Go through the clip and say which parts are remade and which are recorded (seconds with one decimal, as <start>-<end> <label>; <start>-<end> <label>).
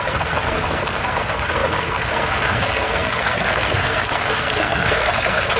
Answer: 0.0-5.6 remade